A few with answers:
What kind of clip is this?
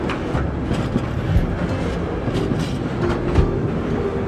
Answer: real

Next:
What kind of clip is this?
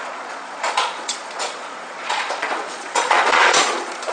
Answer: fake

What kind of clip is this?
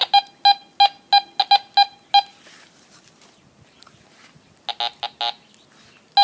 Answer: real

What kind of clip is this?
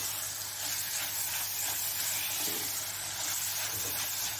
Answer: real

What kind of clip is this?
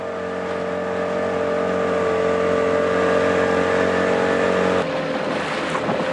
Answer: real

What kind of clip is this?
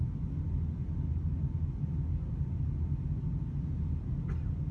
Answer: real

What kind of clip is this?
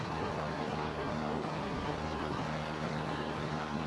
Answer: fake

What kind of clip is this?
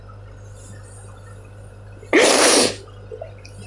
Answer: real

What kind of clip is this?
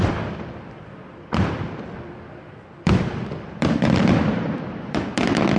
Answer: fake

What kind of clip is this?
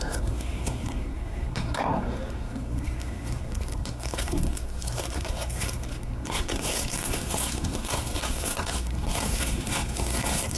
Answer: fake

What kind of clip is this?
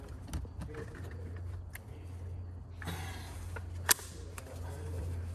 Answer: real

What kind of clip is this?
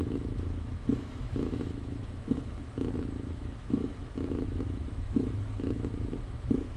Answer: fake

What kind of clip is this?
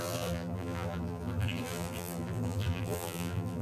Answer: fake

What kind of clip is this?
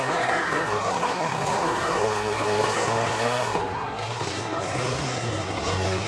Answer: fake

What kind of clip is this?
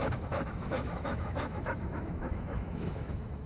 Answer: fake